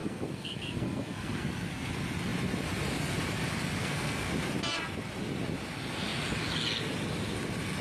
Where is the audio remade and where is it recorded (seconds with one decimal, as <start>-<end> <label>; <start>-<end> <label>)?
0.0-1.9 remade; 1.9-3.8 recorded; 3.8-4.3 remade; 4.3-7.8 recorded